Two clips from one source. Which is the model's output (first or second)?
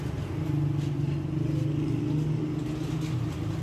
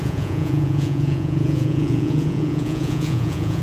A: second